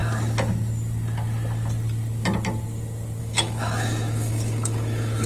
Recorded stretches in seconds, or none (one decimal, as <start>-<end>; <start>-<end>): 0.0-3.2